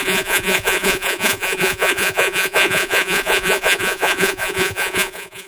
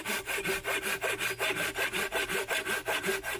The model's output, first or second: first